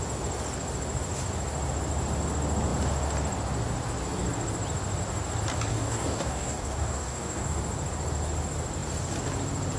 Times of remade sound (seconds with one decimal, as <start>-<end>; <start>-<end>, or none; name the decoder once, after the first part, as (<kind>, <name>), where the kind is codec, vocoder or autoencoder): 5.7-7.6 (codec, DAC)